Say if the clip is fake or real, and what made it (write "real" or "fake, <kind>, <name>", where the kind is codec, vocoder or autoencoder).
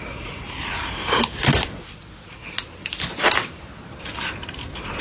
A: real